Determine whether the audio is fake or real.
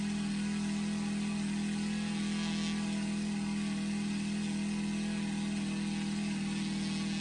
real